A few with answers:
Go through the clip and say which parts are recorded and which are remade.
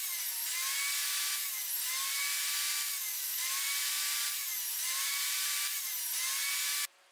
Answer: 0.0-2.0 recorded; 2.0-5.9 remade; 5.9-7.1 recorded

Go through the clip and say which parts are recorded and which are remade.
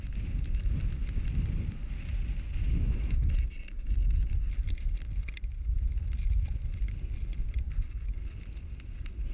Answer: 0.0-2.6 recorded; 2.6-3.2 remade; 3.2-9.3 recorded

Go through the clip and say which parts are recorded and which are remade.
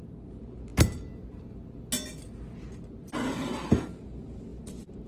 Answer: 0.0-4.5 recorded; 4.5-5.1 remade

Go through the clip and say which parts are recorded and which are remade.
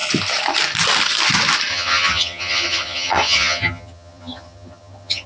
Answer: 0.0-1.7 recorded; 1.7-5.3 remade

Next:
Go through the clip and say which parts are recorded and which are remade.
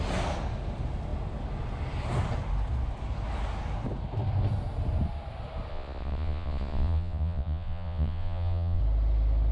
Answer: 0.0-5.7 recorded; 5.7-8.8 remade; 8.8-9.5 recorded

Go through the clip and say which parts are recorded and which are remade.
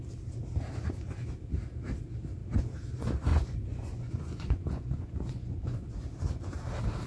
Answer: 0.0-3.3 recorded; 3.3-5.9 remade; 5.9-7.1 recorded